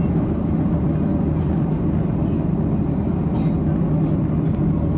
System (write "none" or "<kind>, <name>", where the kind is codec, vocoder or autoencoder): none